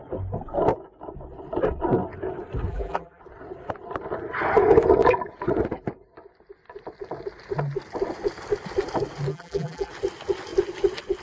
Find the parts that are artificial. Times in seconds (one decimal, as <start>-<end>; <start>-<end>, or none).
2.7-3.2; 9.3-9.9